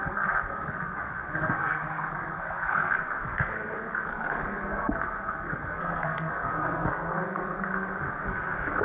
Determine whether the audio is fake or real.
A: fake